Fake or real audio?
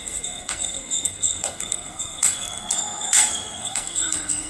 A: fake